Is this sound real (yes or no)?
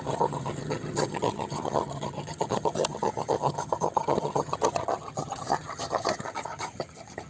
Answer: no